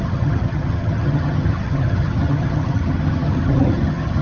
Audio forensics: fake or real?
fake